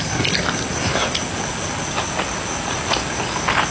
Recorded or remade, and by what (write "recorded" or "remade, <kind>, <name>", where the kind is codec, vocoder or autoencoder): recorded